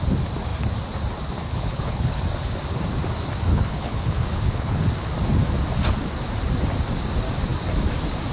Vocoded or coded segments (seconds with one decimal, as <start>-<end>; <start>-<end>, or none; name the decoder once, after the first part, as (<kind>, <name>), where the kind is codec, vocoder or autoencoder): 1.4-2.2 (codec, HILCodec); 3.5-4.8